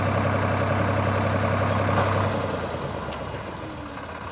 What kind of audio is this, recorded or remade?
recorded